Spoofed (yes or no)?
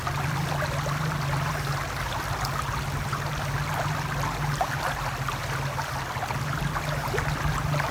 no